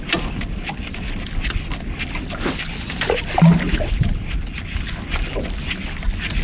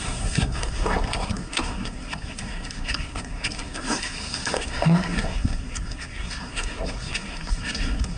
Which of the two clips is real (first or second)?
first